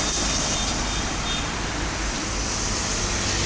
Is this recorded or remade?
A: recorded